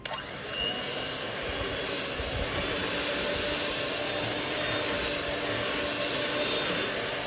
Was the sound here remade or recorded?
recorded